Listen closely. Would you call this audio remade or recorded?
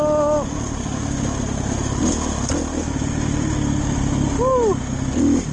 recorded